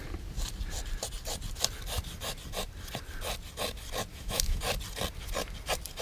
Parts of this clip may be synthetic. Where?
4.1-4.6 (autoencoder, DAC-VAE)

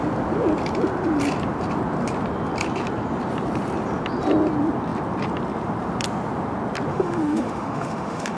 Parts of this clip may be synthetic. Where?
6.9-8.4 (autoencoder, DAC-VAE)

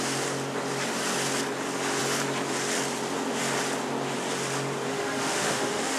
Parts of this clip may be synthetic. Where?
4.9-6.0 (autoencoder, DAC-VAE)

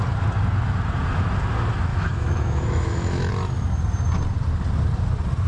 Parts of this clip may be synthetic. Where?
1.9-3.3 (autoencoder, DAC-VAE)

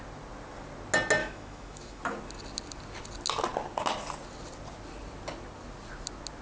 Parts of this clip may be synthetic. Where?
1.2-2.0 (autoencoder, DAC-VAE)

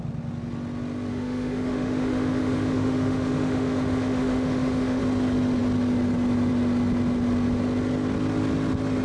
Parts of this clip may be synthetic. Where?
1.1-5.0 (autoencoder, DAC-VAE)

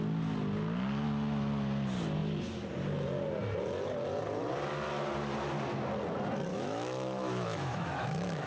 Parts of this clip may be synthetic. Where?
6.5-8.5 (autoencoder, DAC-VAE)

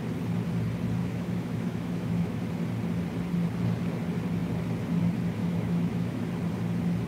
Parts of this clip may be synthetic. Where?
1.0-2.4 (autoencoder, DAC-VAE); 5.4-6.3